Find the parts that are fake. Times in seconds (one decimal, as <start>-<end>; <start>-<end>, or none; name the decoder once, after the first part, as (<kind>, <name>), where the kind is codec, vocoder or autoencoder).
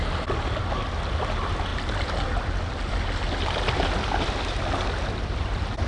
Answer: none